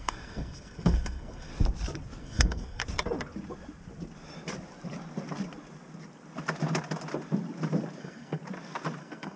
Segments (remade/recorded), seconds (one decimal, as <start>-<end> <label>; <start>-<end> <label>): 0.0-1.5 remade; 1.5-2.2 recorded; 2.2-2.8 remade; 2.8-8.0 recorded; 8.0-8.4 remade; 8.4-9.0 recorded; 9.0-9.4 remade